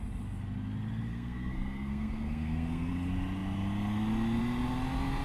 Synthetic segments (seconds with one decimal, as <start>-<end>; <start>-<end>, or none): 1.1-2.9